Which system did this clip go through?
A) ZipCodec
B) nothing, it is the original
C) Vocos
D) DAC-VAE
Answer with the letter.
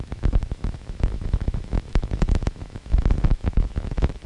D